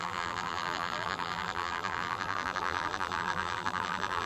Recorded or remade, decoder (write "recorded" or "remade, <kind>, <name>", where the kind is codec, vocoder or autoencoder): remade, vocoder, BigVGAN v2